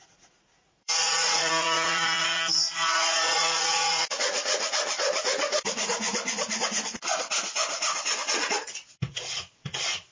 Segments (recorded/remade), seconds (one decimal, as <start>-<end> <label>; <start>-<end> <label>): 0.0-6.1 remade; 6.1-6.9 recorded; 6.9-9.6 remade; 9.6-10.1 recorded